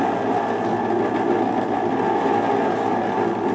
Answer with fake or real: real